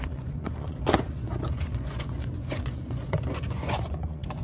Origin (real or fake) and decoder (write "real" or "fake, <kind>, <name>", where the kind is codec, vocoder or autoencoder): fake, vocoder, Vocos